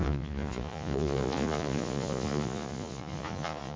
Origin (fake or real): fake